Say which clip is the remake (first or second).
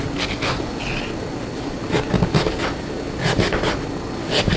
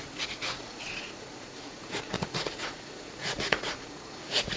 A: second